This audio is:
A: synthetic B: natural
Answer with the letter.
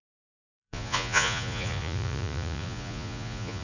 A